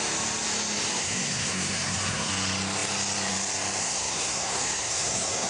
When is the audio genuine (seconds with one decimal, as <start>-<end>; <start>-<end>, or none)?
0.0-0.9; 2.3-3.8